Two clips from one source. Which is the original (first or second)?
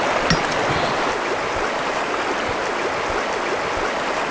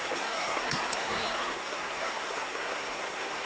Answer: first